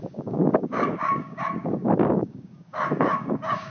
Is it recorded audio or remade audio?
remade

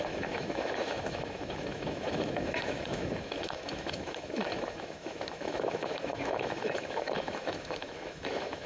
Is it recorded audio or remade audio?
remade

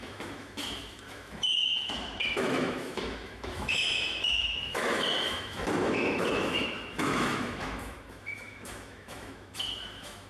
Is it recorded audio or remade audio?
remade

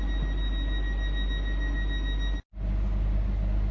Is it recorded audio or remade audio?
recorded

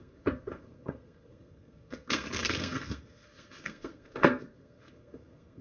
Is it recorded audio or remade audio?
remade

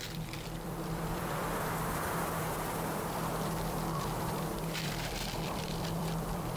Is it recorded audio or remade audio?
remade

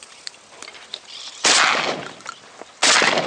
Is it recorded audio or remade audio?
recorded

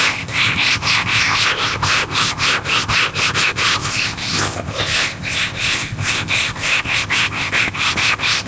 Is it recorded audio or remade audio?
remade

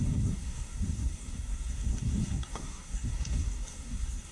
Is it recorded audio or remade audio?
remade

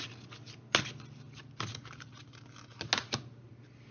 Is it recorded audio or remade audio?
recorded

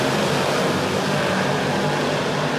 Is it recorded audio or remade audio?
recorded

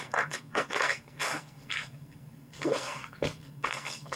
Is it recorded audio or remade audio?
remade